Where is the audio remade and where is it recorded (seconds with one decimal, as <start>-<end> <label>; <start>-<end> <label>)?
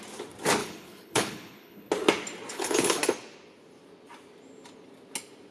0.0-0.6 recorded; 0.6-1.9 remade; 1.9-2.5 recorded; 2.5-3.0 remade; 3.0-5.5 recorded